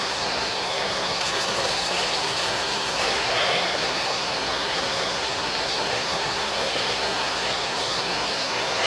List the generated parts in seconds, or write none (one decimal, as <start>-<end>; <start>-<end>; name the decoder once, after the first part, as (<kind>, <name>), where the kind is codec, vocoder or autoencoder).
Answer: 0.0-8.9 (codec, SNAC)